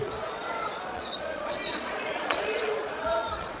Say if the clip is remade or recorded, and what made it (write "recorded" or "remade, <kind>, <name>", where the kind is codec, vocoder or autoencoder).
remade, vocoder, Vocos